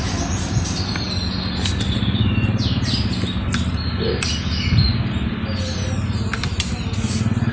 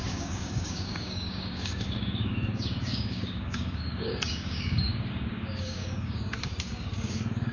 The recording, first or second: first